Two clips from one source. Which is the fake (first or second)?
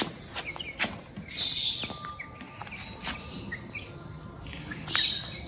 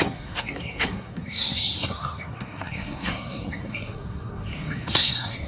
second